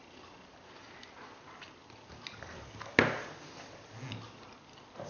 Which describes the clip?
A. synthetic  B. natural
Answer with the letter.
B